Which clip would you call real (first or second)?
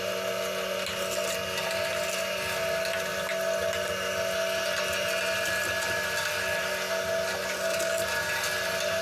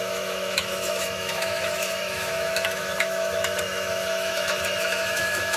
first